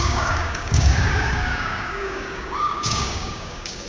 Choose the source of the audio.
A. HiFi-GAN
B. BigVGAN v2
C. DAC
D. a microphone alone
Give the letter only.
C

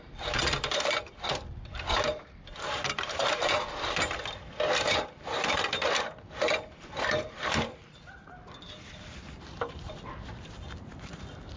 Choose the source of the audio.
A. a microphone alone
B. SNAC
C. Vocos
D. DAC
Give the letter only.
A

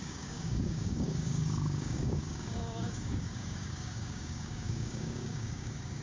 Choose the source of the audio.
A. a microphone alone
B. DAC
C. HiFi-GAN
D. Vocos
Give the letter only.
B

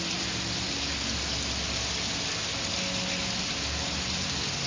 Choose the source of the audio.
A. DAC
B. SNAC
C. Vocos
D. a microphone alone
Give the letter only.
D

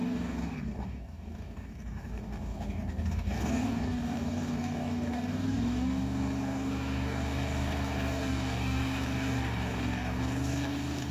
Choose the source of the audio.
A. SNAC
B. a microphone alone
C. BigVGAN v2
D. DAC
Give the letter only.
D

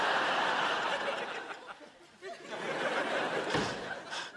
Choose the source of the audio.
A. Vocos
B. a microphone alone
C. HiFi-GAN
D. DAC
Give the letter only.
B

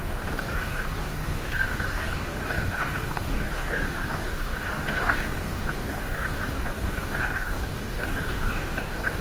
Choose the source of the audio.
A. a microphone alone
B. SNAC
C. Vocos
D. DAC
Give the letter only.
D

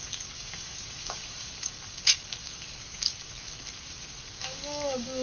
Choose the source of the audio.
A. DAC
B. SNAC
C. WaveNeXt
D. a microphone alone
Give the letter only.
A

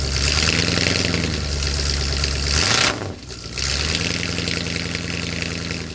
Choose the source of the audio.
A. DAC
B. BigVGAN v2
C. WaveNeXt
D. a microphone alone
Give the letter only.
D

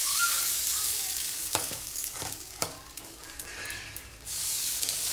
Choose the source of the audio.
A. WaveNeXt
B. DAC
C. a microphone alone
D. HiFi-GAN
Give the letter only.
B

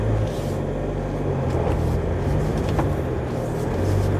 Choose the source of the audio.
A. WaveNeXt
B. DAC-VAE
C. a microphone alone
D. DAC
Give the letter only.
C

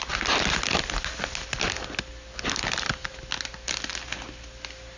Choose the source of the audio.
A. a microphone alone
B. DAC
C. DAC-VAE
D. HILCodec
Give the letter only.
A